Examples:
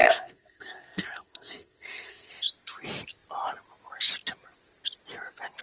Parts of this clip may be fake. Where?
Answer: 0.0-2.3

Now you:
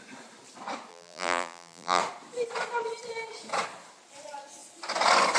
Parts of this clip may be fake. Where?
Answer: 0.9-2.0

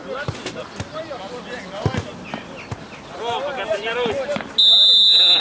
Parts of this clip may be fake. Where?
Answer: none

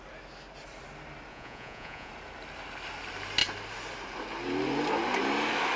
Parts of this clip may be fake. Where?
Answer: 1.3-2.1

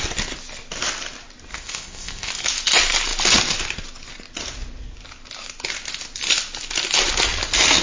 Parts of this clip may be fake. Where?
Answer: 1.5-2.3

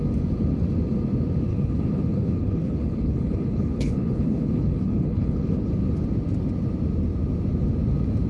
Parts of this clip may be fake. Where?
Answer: 1.5-5.7